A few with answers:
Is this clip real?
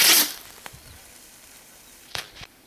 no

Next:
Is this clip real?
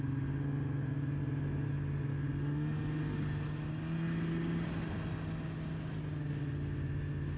yes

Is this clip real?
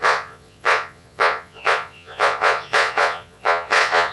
no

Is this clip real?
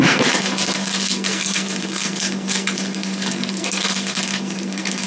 no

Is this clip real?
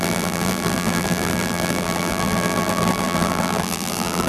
no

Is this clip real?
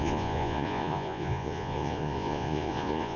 no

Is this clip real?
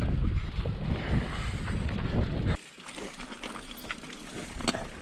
yes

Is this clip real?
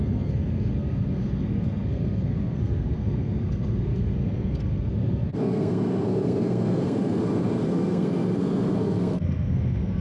no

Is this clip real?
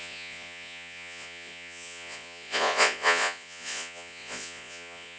no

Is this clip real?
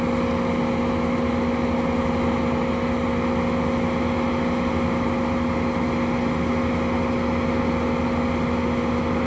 yes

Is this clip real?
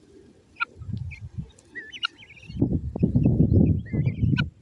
yes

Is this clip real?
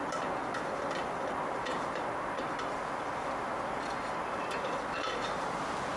yes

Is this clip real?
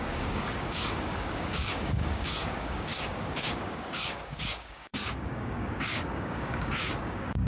no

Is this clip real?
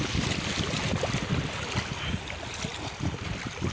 yes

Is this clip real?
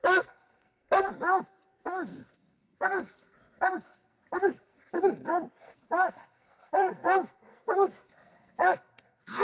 no